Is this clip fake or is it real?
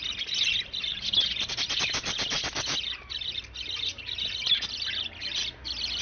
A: real